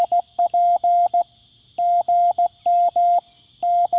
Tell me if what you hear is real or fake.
real